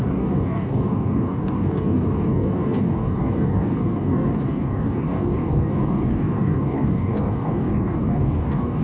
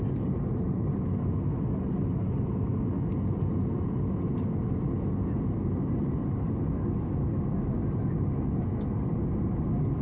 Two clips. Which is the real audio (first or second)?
second